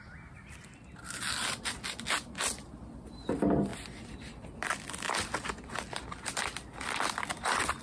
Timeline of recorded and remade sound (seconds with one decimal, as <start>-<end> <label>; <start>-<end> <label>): 0.0-7.8 recorded